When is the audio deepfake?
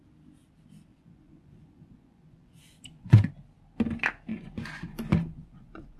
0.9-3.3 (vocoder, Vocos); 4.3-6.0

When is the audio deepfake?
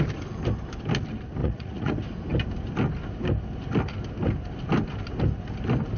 1.4-1.9 (vocoder, Vocos)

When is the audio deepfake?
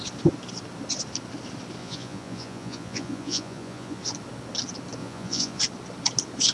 1.8-4.0 (vocoder, Vocos); 5.0-5.6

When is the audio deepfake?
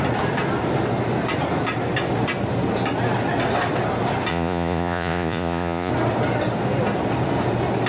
4.3-5.9 (vocoder, Vocos)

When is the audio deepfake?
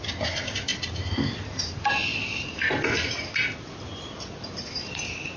none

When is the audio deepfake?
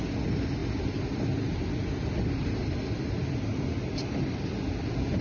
none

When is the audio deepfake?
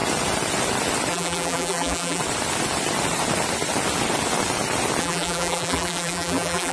1.1-2.2 (vocoder, BigVGAN v2); 5.0-6.7